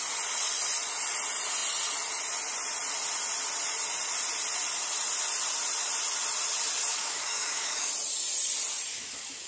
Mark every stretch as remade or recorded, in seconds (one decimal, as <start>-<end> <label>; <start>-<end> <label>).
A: 0.0-6.9 recorded; 6.9-7.9 remade; 7.9-8.9 recorded; 8.9-9.5 remade